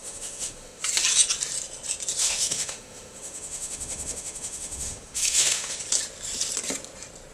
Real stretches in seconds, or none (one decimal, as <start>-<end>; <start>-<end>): 0.8-2.2; 5.8-7.3